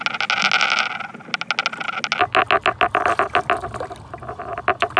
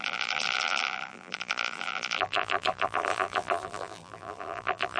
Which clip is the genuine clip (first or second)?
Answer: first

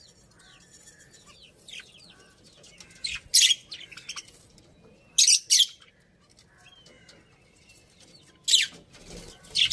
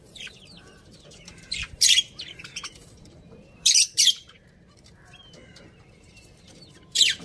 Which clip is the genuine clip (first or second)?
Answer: first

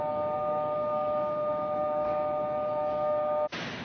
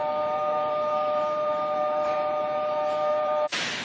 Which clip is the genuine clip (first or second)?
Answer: first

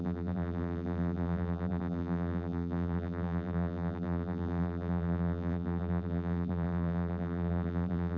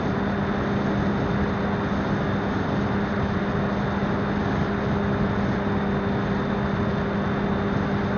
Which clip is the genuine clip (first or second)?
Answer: second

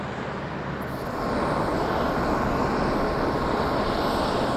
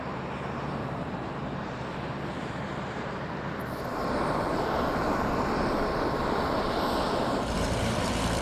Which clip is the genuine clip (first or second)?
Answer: first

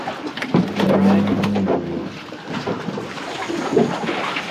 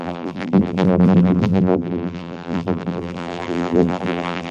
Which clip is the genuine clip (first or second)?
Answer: first